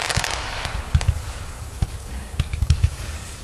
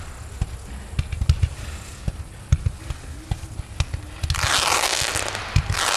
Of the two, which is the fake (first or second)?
first